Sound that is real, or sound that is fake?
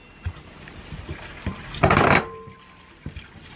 fake